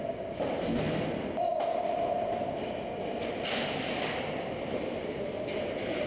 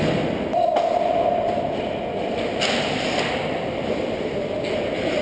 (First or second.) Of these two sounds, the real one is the first